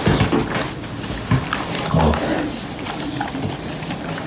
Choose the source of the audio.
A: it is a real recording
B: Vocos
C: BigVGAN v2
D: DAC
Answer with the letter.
A